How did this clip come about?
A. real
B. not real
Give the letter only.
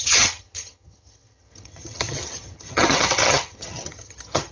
B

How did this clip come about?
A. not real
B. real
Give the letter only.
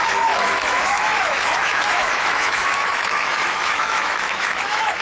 A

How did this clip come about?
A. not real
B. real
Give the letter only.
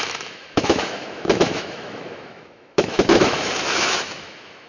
A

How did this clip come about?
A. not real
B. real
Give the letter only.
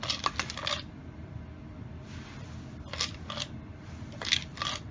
B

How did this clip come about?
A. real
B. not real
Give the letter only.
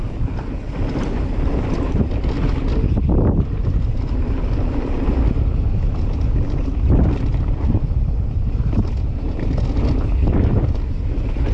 A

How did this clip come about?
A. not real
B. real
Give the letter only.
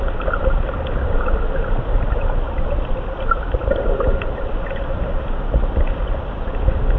B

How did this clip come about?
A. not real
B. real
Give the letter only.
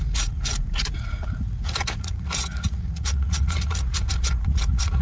A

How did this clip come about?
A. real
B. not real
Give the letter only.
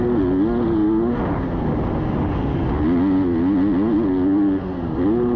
A